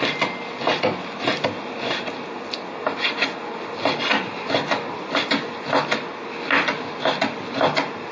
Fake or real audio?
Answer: real